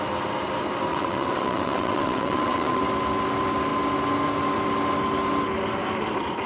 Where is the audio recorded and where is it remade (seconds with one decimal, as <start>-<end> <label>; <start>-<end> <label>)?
0.0-0.9 recorded; 0.9-2.8 remade; 2.8-6.5 recorded